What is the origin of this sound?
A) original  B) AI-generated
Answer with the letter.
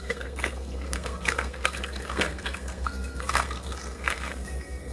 B